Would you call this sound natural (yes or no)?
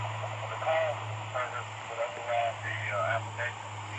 yes